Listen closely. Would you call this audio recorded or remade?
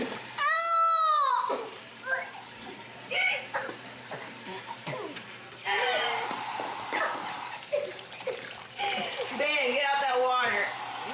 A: remade